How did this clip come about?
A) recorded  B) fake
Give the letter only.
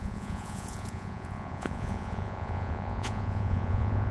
B